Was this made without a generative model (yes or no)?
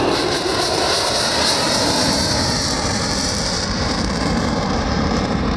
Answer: no